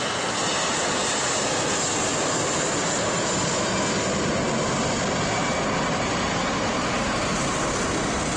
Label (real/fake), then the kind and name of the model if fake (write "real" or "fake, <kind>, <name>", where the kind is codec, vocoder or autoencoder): real